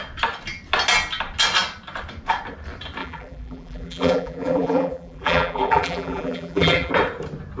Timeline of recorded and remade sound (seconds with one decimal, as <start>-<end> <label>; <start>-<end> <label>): 0.0-3.0 recorded; 3.0-6.9 remade; 6.9-7.6 recorded